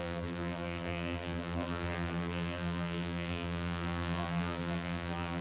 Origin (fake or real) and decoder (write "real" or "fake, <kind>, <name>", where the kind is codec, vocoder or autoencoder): fake, vocoder, BigVGAN v2